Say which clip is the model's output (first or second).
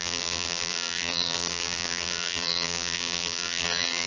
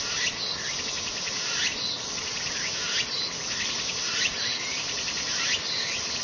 first